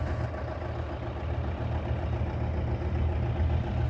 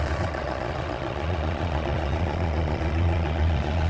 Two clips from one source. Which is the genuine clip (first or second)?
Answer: first